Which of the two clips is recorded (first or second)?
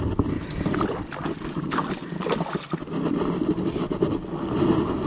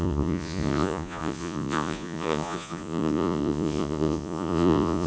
first